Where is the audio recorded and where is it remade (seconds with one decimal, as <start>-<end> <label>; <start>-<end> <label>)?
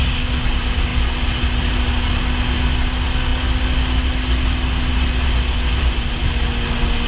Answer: 0.0-7.1 recorded